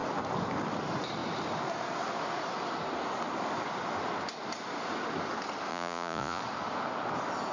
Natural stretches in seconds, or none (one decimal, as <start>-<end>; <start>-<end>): 0.0-5.7; 6.4-7.5